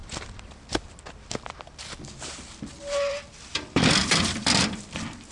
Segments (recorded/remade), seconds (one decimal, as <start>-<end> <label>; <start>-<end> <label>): 0.0-2.8 recorded; 2.8-5.3 remade